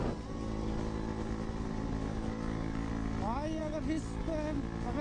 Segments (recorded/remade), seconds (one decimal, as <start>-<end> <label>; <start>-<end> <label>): 0.0-2.1 recorded; 2.1-2.9 remade; 2.9-5.0 recorded